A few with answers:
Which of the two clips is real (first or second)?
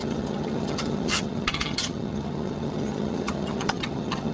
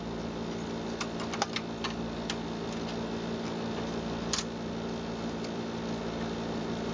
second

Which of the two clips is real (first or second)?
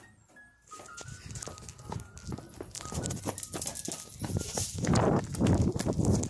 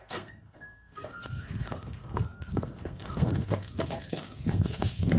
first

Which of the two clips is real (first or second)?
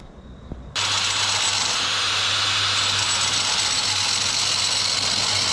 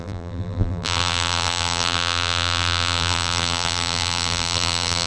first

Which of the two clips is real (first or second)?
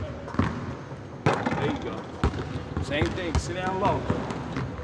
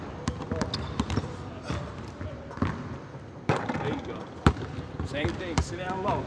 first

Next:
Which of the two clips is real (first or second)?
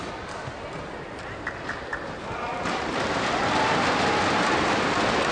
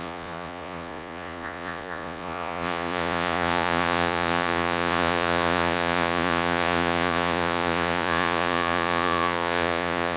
first